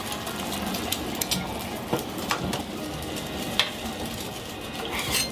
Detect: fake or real real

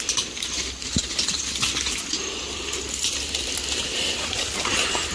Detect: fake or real real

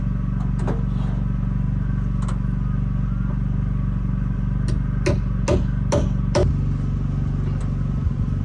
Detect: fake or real real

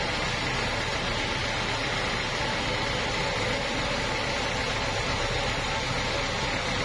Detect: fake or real real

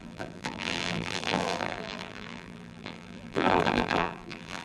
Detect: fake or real fake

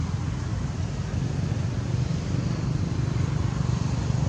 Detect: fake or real real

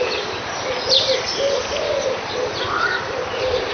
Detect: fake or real real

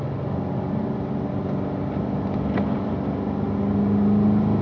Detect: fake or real real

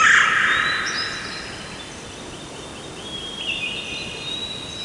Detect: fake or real real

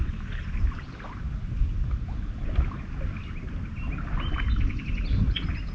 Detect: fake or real real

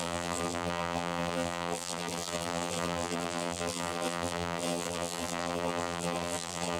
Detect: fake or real fake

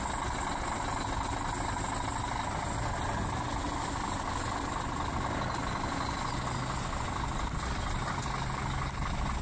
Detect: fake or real real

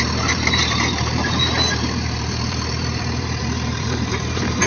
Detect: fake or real fake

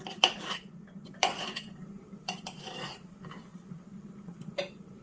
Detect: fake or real fake